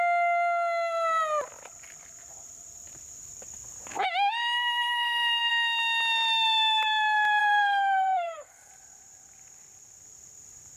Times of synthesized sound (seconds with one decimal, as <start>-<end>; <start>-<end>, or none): 4.9-5.5; 7.4-8.7

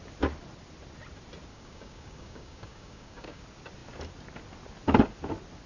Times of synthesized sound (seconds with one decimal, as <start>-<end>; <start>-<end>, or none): 1.5-3.4

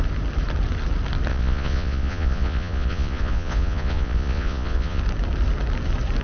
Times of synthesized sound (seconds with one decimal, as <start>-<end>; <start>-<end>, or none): 1.3-5.0

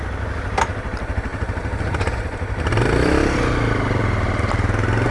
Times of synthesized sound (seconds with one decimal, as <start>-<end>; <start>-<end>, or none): none

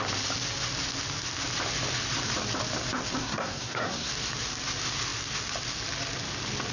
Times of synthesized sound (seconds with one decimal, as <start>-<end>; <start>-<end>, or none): 3.2-4.1

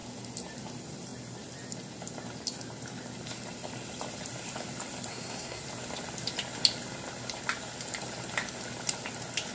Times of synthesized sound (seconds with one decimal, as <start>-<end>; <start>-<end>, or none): 5.1-5.6

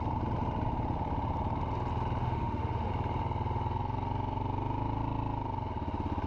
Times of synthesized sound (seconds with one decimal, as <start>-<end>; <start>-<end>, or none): 2.2-2.9

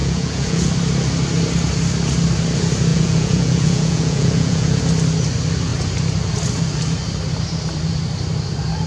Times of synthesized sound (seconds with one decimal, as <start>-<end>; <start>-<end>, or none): 0.0-0.7; 2.9-4.8